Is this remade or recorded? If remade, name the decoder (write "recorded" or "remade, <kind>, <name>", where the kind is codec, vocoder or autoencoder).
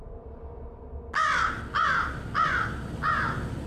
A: recorded